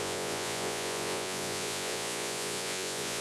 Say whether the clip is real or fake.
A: fake